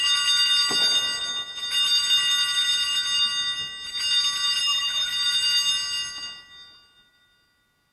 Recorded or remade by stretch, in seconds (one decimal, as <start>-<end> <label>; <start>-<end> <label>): 0.0-4.6 recorded; 4.6-5.1 remade; 5.1-7.9 recorded